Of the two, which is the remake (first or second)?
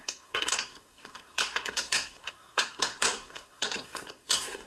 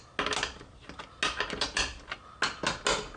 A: first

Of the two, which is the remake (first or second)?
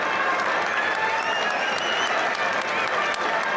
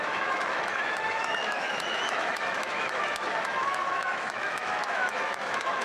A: second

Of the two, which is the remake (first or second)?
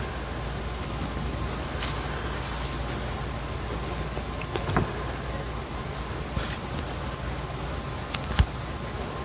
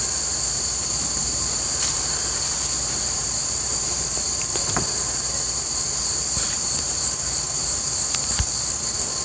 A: second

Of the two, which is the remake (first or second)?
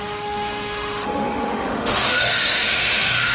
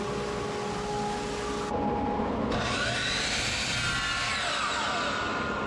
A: first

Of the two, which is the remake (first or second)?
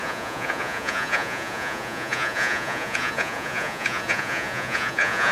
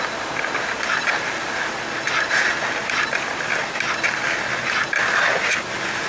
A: first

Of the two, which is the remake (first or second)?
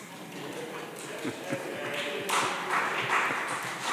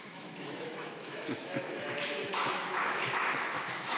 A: second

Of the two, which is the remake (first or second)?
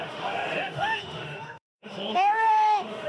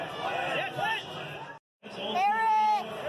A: first